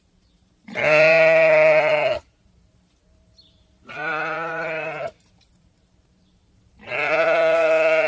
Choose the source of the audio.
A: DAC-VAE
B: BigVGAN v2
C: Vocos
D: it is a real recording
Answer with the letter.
B